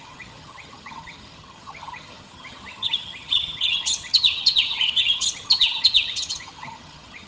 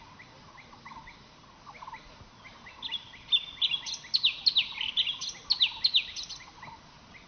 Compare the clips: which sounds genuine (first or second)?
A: second